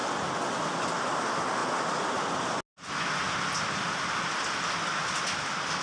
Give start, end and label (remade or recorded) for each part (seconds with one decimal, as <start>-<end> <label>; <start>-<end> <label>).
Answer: 0.0-5.8 recorded